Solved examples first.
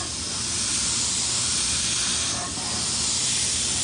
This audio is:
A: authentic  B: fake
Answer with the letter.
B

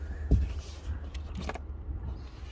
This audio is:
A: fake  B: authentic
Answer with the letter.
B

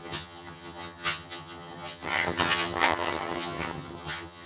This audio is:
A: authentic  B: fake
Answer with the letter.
B